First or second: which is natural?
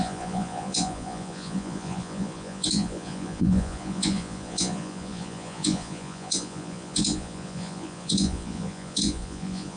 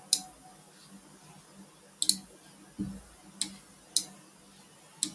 second